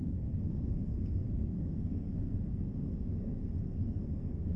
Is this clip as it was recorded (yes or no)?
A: no